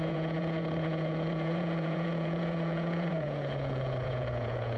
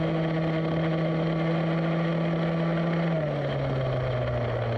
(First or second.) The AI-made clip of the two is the first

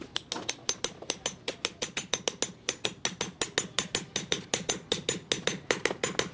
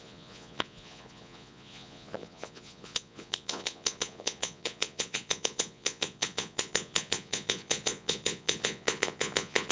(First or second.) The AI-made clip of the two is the second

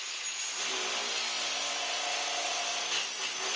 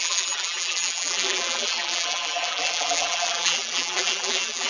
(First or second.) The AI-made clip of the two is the second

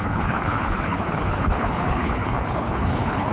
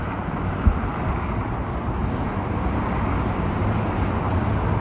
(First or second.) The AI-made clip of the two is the first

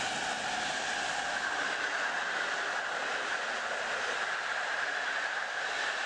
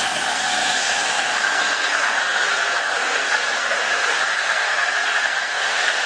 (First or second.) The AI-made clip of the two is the second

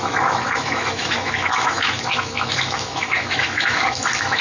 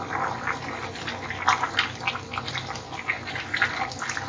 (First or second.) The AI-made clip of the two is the first